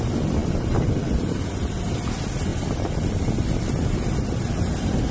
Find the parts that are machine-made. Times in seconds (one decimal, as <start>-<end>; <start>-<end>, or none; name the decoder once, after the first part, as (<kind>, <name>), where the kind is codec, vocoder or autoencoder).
0.4-0.9 (vocoder, BigVGAN v2); 2.5-3.6